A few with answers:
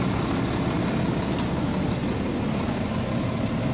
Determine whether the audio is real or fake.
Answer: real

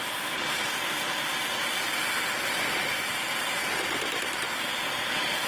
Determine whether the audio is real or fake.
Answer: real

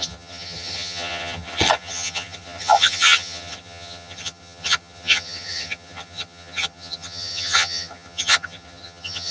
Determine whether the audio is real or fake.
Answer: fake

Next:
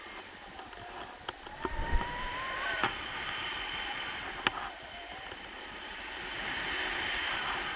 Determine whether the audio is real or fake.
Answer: real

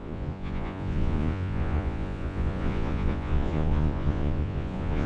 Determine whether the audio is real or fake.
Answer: fake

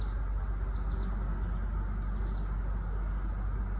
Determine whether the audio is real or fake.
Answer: real